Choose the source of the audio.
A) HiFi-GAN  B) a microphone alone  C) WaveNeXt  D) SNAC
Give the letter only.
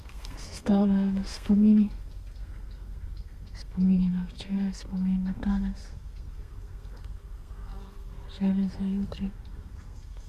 D